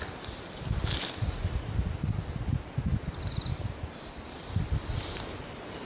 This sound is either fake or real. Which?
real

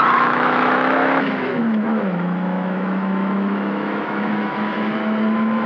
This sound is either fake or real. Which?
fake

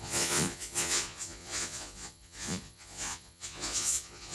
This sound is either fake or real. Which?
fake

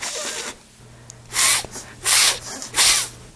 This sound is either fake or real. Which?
real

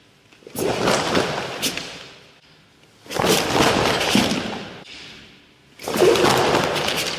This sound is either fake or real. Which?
real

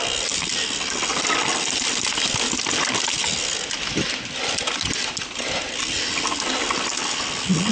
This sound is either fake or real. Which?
real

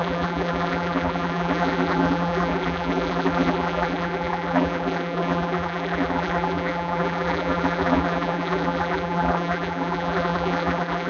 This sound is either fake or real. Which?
fake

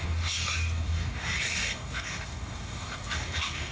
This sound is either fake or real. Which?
fake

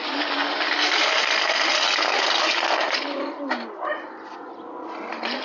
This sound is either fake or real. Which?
fake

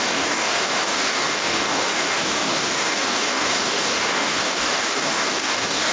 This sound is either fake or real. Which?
fake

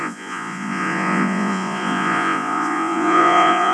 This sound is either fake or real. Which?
fake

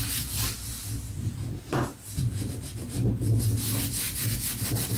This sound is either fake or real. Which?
real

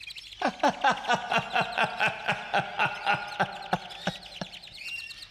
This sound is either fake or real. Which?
real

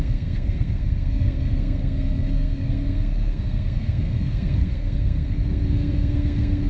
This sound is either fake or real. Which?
fake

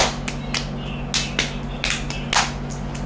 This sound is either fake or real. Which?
real